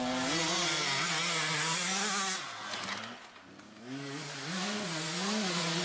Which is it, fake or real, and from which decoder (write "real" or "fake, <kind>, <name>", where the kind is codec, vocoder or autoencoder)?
real